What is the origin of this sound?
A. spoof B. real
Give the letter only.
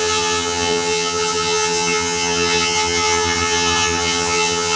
A